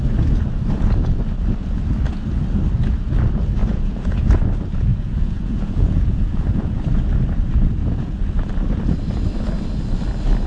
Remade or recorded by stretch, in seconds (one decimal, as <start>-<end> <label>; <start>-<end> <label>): 0.0-3.6 recorded; 3.6-4.2 remade; 4.2-4.9 recorded; 4.9-6.8 remade; 6.8-7.8 recorded; 7.8-8.5 remade; 8.5-10.5 recorded